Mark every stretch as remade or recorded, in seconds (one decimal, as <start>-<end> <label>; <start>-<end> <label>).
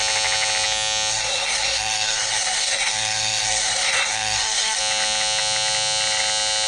0.0-1.1 recorded; 1.1-4.8 remade; 4.8-6.7 recorded